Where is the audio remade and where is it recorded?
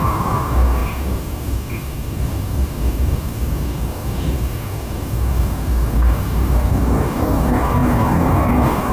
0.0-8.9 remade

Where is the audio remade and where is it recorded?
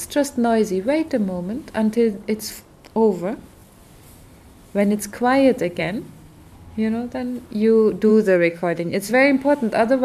0.0-8.1 recorded; 8.1-9.1 remade; 9.1-10.0 recorded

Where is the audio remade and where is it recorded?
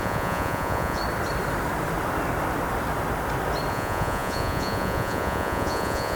0.0-1.0 remade; 1.0-3.7 recorded; 3.7-6.2 remade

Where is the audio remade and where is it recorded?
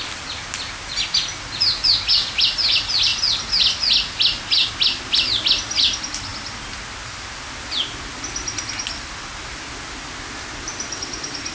0.0-11.5 recorded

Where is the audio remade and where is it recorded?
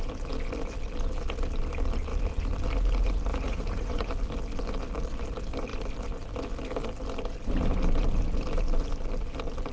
0.0-3.3 recorded; 3.3-4.1 remade; 4.1-9.7 recorded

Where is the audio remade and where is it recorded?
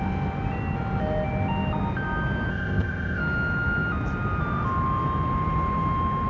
0.0-2.5 recorded; 2.5-3.2 remade; 3.2-6.3 recorded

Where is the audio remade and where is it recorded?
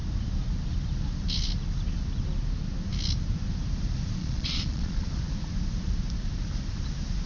0.0-4.2 recorded; 4.2-5.2 remade; 5.2-7.3 recorded